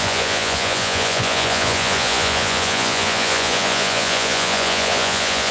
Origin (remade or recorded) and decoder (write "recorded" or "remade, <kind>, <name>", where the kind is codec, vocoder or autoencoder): remade, vocoder, Vocos